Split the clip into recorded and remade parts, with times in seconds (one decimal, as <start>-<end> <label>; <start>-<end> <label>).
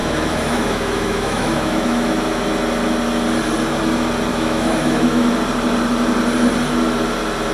0.0-2.4 remade; 2.4-4.3 recorded; 4.3-5.3 remade; 5.3-7.5 recorded